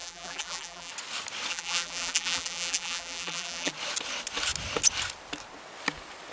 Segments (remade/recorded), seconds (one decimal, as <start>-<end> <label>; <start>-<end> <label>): 0.0-0.9 remade; 0.9-1.5 recorded; 1.5-3.7 remade; 3.7-6.3 recorded